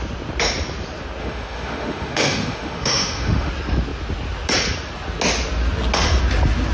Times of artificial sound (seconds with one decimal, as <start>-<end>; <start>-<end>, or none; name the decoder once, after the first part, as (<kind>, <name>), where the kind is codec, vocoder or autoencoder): 1.2-3.5 (autoencoder, DAC-VAE)